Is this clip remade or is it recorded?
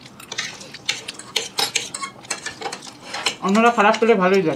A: recorded